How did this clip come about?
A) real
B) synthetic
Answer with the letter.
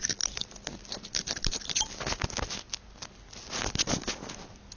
A